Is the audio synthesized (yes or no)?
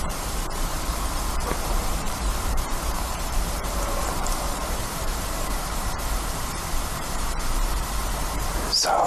yes